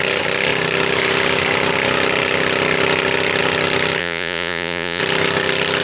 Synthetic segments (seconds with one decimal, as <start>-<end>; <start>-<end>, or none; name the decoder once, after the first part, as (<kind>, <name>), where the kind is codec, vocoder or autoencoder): 4.0-5.0 (vocoder, Vocos)